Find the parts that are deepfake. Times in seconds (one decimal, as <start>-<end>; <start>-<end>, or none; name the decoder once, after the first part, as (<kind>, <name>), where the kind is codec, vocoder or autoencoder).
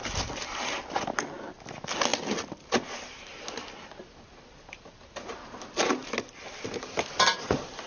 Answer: none